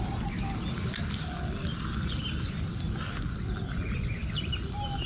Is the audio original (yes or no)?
yes